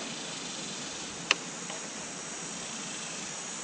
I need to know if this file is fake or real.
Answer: real